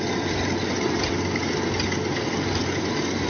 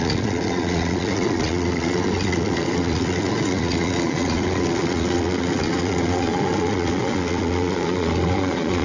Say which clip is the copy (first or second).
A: second